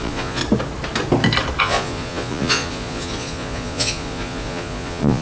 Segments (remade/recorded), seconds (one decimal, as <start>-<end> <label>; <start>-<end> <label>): 0.0-0.4 remade; 0.4-1.6 recorded; 1.6-5.2 remade